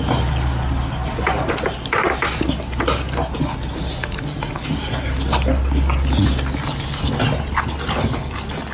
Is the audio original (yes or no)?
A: yes